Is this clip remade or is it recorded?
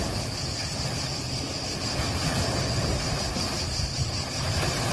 recorded